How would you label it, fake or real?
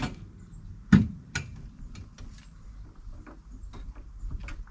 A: real